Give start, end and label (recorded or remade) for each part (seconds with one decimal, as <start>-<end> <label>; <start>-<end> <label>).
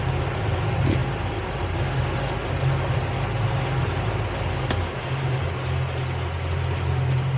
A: 0.0-7.4 recorded